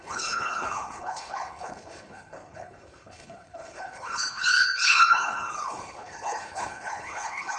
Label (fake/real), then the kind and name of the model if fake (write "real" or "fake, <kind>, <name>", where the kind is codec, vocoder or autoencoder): fake, codec, HILCodec